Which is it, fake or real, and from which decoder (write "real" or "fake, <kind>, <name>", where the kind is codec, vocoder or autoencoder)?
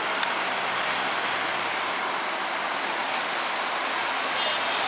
real